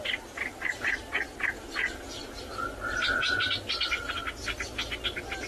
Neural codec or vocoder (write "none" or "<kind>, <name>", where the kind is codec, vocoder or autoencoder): none